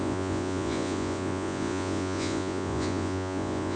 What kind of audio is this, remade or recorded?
remade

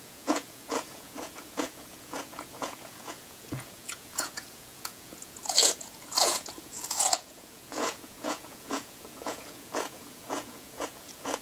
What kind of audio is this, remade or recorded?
remade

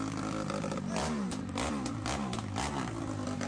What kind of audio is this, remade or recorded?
recorded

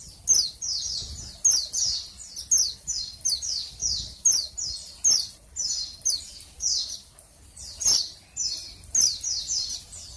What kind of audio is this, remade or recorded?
recorded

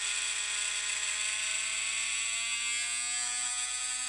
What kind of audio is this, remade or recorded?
recorded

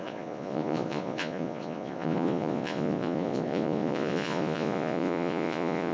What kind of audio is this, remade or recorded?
remade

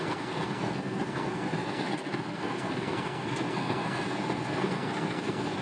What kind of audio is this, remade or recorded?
remade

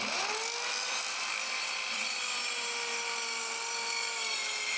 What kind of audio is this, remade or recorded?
recorded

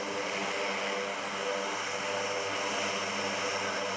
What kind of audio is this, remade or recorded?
recorded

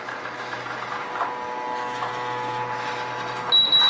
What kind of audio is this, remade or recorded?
recorded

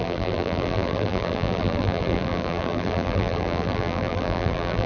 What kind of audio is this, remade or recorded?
remade